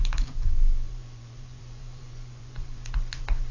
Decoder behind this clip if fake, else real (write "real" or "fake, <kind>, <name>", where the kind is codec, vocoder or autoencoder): fake, vocoder, Vocos